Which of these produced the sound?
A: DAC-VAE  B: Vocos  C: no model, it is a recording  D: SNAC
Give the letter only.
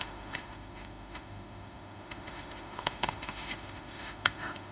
A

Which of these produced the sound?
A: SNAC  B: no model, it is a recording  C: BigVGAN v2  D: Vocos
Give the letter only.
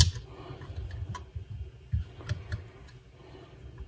B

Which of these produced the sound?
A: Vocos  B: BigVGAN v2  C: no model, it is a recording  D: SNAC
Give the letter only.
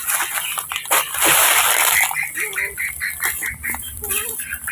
C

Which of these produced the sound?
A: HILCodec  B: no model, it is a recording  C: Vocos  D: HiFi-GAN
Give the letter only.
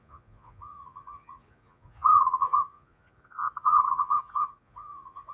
C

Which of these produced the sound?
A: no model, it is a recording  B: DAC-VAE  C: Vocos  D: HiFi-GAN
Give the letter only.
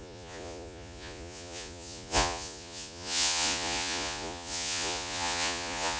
C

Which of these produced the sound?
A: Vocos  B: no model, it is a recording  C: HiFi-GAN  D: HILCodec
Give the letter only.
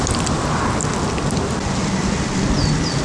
B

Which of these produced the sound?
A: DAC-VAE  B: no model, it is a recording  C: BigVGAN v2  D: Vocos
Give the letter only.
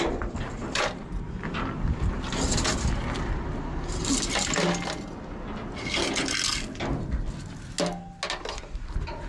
B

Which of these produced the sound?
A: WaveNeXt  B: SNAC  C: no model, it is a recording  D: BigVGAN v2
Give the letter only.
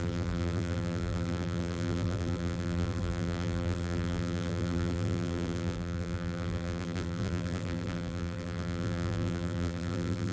D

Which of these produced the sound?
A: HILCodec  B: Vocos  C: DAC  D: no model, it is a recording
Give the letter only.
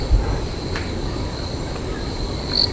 D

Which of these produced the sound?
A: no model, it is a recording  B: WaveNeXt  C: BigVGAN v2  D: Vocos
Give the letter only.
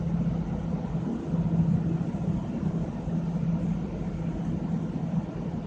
A